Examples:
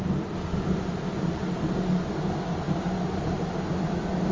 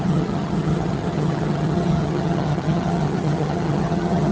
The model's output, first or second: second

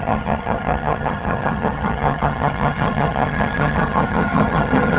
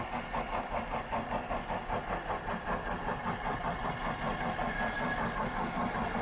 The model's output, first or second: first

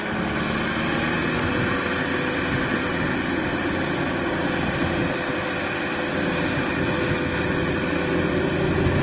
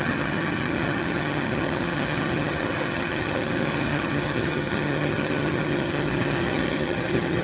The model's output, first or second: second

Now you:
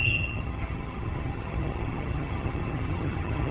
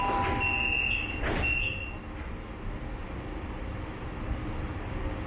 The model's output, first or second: first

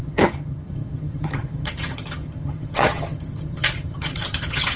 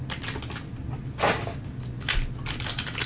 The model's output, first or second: first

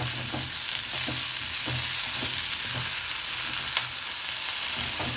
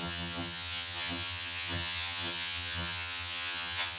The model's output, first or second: second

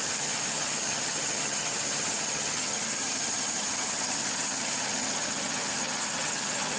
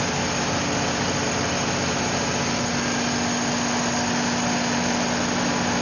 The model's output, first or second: first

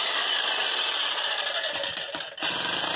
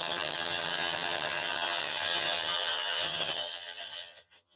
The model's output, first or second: second